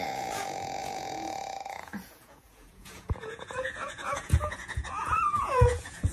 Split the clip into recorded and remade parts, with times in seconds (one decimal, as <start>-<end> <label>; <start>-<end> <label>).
0.0-6.1 remade